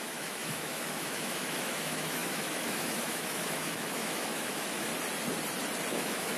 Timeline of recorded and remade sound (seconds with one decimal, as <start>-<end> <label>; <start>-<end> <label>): 0.0-4.9 remade; 4.9-5.9 recorded; 5.9-6.4 remade